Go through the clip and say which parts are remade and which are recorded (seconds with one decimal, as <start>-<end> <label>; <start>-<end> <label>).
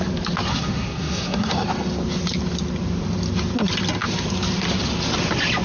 0.0-0.5 recorded; 0.5-1.5 remade; 1.5-5.6 recorded